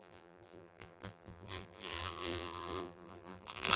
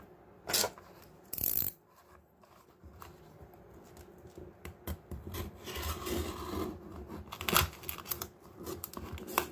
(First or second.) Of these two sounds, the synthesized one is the first